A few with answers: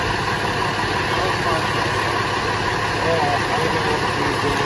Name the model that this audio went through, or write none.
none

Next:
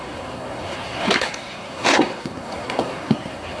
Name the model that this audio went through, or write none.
codec, SNAC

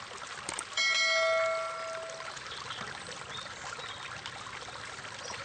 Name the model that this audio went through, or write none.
none